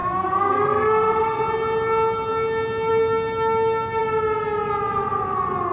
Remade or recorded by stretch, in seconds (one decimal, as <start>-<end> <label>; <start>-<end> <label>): 0.0-1.4 remade; 1.4-5.7 recorded